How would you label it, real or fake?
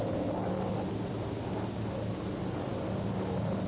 real